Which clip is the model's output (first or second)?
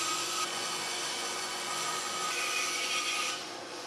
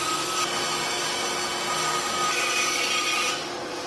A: first